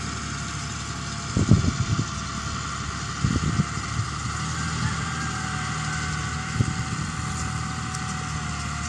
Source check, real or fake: real